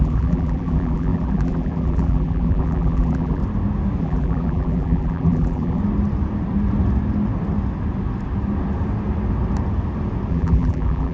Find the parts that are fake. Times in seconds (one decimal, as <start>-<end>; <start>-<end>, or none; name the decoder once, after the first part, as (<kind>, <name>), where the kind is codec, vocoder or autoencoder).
0.0-3.4 (vocoder, BigVGAN v2); 4.0-5.8; 10.3-11.1